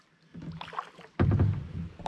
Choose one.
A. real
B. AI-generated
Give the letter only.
A